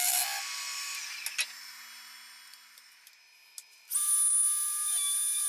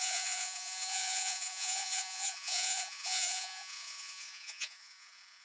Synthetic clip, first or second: second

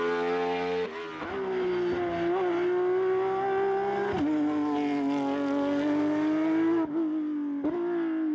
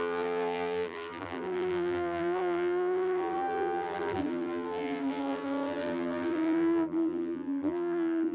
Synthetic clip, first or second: second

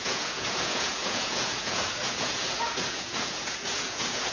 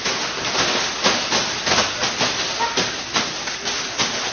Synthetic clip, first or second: first